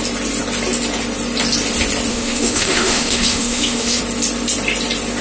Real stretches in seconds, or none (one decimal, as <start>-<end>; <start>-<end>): 0.0-2.1; 4.0-5.2

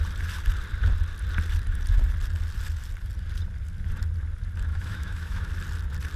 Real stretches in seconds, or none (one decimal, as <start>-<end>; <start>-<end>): 0.0-4.7; 5.5-6.2

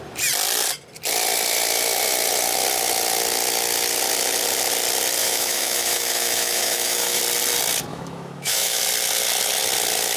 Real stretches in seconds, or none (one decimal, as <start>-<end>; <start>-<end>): 0.0-5.2; 7.2-7.9; 8.8-10.2

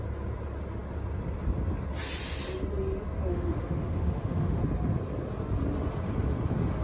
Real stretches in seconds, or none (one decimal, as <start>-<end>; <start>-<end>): 0.0-3.3; 4.6-6.8

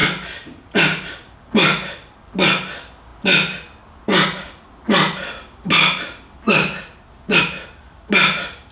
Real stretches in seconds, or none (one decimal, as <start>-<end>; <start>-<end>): 0.0-8.7

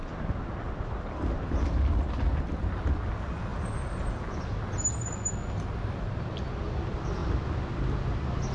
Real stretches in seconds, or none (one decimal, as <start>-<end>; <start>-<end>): 0.0-8.5

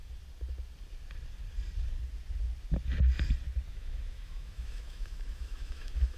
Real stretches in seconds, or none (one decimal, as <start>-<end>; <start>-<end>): 0.0-3.7

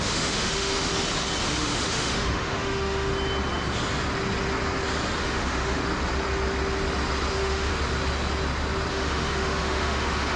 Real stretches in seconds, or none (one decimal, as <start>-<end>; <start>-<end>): 0.9-1.6; 3.1-5.2; 5.8-7.3; 7.7-8.9